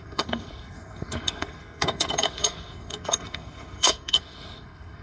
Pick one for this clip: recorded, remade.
remade